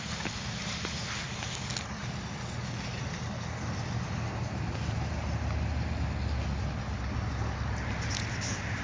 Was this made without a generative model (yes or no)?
yes